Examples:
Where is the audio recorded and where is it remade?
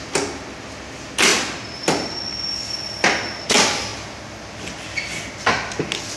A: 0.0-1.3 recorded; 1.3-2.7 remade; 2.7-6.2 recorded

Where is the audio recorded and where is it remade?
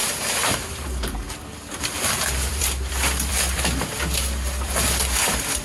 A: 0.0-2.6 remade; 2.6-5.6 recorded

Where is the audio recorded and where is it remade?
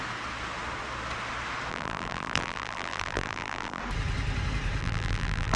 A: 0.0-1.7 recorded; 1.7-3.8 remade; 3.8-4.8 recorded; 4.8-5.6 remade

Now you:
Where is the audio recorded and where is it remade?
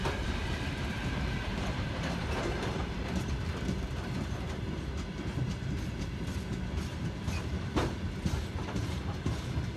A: 0.0-1.0 remade; 1.0-1.5 recorded; 1.5-4.8 remade; 4.8-6.9 recorded; 6.9-7.5 remade; 7.5-9.8 recorded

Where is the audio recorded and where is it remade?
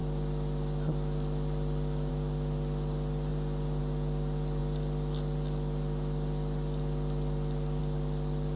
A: 0.0-8.6 recorded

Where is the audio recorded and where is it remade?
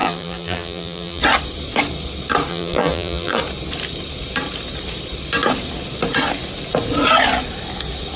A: 0.0-1.2 remade; 1.2-2.5 recorded; 2.5-3.4 remade; 3.4-8.2 recorded